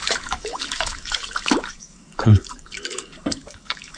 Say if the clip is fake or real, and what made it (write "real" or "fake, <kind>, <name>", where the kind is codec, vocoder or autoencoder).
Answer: fake, codec, DAC